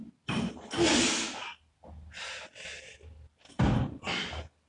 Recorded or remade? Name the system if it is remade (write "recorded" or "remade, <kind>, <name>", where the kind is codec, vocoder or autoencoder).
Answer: recorded